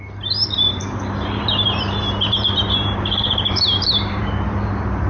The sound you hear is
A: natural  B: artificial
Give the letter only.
B